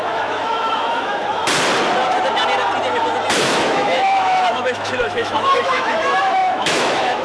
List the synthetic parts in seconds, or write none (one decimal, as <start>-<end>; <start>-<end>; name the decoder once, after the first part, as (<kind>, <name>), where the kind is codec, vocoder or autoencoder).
0.0-1.4 (autoencoder, DAC-VAE); 3.4-7.2